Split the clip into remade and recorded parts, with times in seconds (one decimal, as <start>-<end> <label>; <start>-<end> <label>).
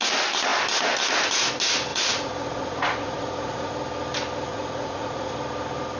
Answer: 0.0-1.9 recorded; 1.9-3.7 remade; 3.7-4.5 recorded; 4.5-5.3 remade; 5.3-6.0 recorded